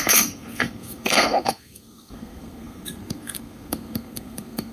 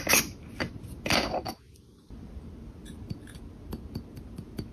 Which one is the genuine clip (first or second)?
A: second